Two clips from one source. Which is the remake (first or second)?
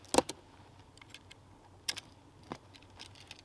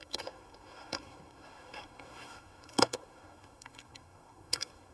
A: second